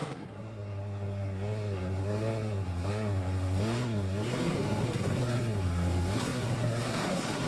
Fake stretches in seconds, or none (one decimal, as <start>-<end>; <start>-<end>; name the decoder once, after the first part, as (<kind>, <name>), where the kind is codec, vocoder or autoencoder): 0.0-7.5 (codec, SNAC)